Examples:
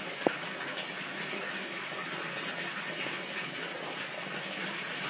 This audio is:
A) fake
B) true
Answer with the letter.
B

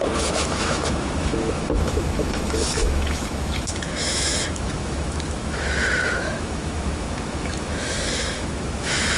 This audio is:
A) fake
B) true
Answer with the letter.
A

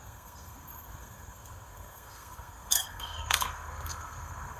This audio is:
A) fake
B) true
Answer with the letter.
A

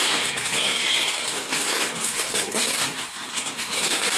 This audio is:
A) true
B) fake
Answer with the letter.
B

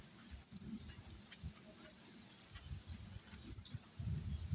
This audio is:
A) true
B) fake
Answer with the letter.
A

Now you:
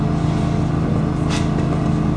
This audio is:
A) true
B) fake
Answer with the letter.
A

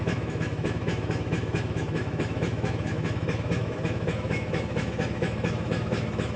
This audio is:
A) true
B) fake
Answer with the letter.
B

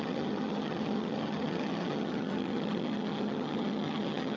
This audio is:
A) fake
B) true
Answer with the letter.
A